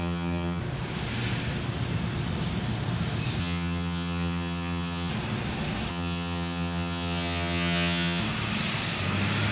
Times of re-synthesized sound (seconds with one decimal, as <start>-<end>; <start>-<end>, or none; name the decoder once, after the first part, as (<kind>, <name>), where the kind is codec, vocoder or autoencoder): 0.0-0.6 (vocoder, HiFi-GAN); 3.4-5.1; 5.9-8.2